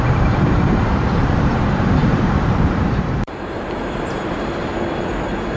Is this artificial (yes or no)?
yes